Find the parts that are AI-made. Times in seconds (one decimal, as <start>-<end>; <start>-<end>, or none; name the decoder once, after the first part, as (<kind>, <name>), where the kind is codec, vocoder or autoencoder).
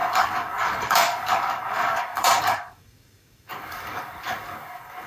0.0-5.1 (codec, DAC)